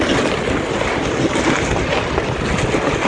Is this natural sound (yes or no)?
yes